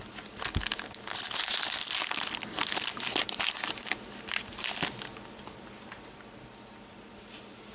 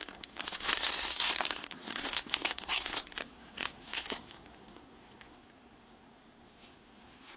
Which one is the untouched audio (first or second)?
first